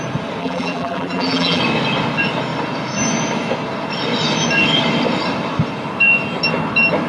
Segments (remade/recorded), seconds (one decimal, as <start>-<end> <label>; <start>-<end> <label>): 0.0-0.4 recorded; 0.4-1.6 remade; 1.6-7.1 recorded